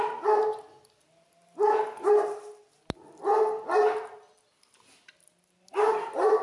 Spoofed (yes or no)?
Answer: no